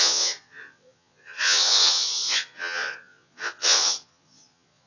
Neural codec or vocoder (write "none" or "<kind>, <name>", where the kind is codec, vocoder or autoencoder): vocoder, Vocos